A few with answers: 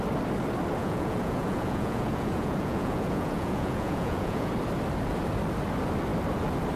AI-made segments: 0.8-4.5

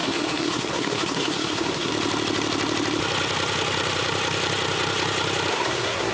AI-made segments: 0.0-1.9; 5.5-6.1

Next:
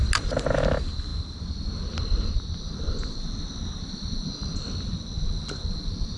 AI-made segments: none

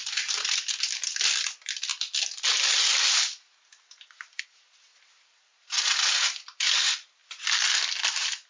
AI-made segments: 0.0-0.6

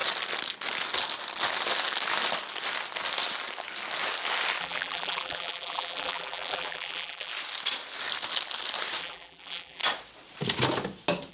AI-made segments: 4.6-7.3; 9.0-9.8